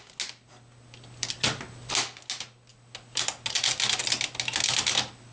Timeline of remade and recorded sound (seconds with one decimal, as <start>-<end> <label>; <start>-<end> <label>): 0.0-5.3 recorded